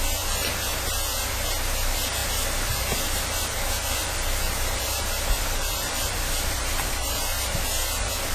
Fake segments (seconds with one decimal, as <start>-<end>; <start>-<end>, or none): 2.2-7.2